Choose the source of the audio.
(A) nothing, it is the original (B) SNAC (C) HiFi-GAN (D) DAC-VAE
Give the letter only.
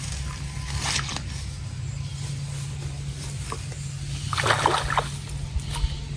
A